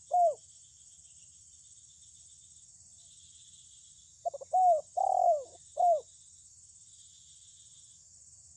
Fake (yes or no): no